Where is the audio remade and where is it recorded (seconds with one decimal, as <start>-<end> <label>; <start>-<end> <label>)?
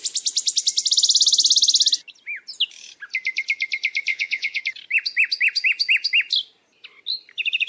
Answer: 0.0-4.1 recorded; 4.1-4.6 remade; 4.6-7.7 recorded